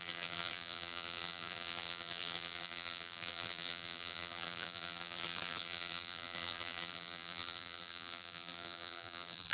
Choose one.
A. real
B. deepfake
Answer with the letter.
B